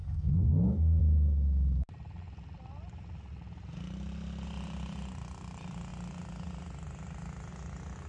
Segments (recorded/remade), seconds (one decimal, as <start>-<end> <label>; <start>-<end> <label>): 0.0-1.0 remade; 1.0-8.1 recorded